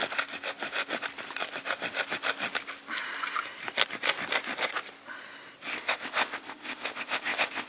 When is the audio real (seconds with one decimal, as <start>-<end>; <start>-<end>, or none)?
0.0-5.7